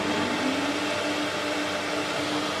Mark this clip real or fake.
real